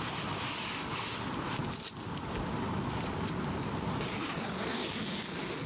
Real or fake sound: real